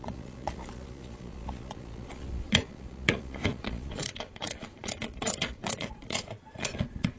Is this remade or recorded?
remade